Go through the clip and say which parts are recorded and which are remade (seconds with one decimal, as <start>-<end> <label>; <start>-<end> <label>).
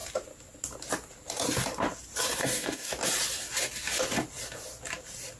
0.0-2.4 recorded; 2.4-2.9 remade; 2.9-5.4 recorded